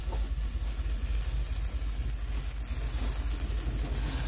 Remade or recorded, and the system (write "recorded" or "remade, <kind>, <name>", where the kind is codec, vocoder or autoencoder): recorded